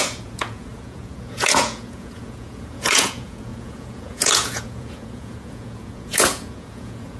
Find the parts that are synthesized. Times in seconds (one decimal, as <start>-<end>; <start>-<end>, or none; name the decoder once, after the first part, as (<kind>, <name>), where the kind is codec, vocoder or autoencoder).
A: 0.0-7.2 (vocoder, Vocos)